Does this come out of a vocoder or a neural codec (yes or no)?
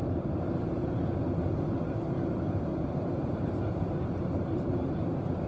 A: yes